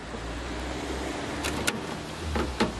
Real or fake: real